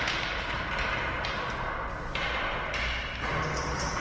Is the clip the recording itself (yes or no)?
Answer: yes